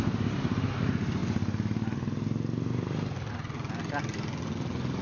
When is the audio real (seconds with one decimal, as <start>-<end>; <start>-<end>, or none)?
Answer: 0.0-5.0